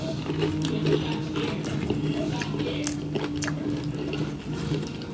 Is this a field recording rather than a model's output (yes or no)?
yes